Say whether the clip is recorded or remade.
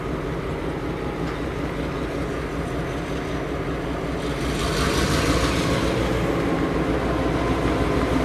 recorded